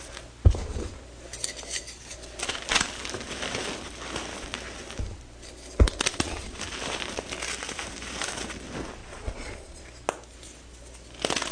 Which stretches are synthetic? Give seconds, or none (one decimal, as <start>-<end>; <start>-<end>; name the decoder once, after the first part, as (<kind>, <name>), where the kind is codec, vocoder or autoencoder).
6.1-6.6 (vocoder, Vocos); 9.0-9.8

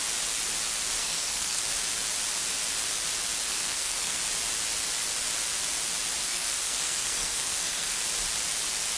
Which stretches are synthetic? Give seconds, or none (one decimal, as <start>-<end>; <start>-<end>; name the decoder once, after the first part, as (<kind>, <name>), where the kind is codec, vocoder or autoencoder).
1.0-1.6 (codec, SNAC); 3.5-4.2; 6.2-8.0

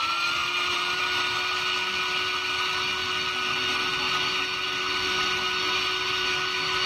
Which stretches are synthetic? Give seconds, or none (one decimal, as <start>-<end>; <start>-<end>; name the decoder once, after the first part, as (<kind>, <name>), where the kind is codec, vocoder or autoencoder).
0.4-1.0 (vocoder, BigVGAN v2)

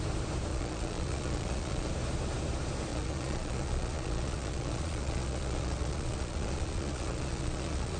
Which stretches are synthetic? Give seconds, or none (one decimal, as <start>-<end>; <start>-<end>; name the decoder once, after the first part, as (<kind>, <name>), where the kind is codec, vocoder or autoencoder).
0.5-1.9 (vocoder, Vocos); 2.9-8.0

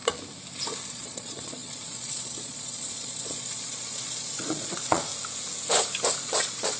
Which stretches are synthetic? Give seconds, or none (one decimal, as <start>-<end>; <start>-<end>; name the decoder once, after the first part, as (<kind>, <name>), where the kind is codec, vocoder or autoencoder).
0.9-5.1 (vocoder, Vocos); 6.2-6.8

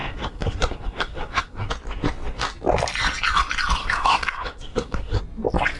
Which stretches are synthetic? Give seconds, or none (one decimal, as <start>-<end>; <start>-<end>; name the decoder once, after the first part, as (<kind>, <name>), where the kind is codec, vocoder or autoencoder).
0.0-1.7 (codec, SNAC); 3.8-5.2

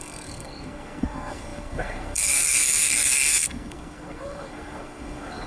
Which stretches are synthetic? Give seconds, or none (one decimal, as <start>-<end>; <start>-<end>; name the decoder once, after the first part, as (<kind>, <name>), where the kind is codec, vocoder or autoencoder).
0.0-5.5 (codec, SNAC)

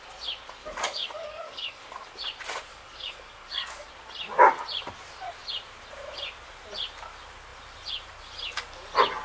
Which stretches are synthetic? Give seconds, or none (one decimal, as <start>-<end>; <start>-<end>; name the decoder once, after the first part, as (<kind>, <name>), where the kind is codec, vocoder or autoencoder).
0.6-1.9 (codec, DAC); 2.7-3.9